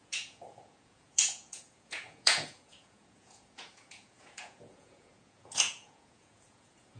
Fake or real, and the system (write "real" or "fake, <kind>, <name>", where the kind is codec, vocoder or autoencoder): fake, vocoder, Vocos